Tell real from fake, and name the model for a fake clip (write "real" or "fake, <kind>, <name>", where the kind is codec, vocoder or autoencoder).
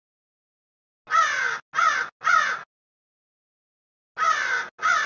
real